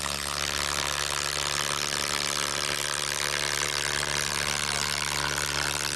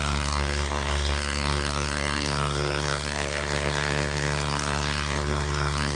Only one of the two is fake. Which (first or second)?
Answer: second